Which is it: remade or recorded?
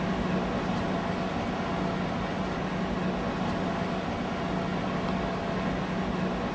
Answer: recorded